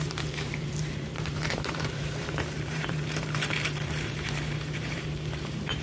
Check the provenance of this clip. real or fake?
fake